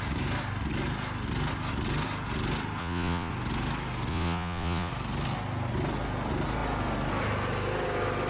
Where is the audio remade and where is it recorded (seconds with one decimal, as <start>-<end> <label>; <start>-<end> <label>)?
0.0-2.8 recorded; 2.8-3.3 remade; 3.3-4.1 recorded; 4.1-4.9 remade; 4.9-8.3 recorded